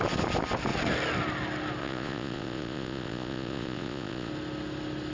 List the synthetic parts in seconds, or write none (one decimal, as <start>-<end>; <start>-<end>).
1.8-4.3

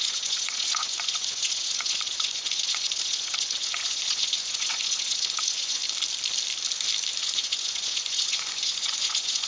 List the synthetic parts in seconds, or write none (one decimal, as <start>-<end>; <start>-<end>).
0.0-5.8; 7.2-9.5